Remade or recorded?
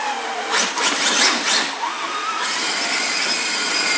recorded